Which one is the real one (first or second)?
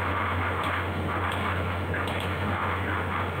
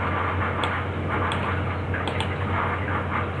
second